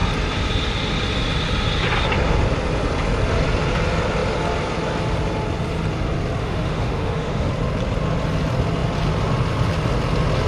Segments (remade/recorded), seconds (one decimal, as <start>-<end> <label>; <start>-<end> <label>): 0.0-6.4 recorded; 6.4-7.5 remade; 7.5-10.5 recorded